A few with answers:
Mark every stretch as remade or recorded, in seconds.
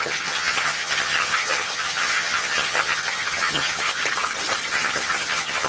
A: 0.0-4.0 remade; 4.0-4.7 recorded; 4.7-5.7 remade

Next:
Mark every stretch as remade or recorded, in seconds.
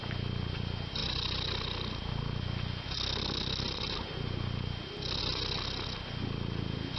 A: 0.0-7.0 recorded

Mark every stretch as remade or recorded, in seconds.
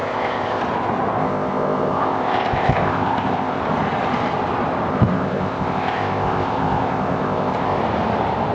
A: 0.0-0.6 remade; 0.6-1.2 recorded; 1.2-3.6 remade; 3.6-4.9 recorded; 4.9-7.8 remade; 7.8-8.5 recorded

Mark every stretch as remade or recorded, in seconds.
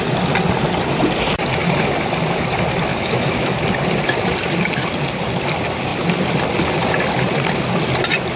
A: 0.0-2.9 recorded; 2.9-3.6 remade; 3.6-8.4 recorded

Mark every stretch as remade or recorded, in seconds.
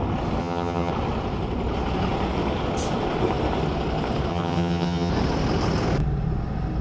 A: 0.0-0.4 recorded; 0.4-0.9 remade; 0.9-4.3 recorded; 4.3-5.1 remade; 5.1-6.8 recorded